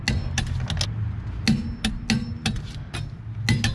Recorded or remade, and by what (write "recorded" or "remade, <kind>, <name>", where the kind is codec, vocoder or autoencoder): recorded